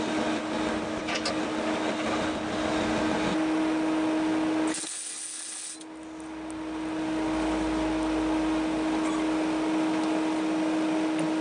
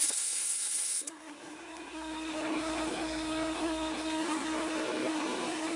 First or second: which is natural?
first